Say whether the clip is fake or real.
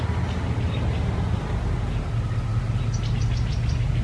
real